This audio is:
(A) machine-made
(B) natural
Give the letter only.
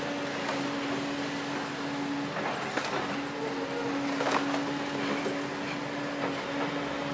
B